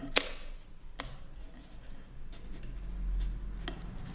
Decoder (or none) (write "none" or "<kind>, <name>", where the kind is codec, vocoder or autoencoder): none